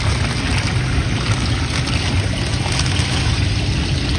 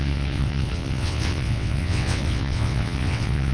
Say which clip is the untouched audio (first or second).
first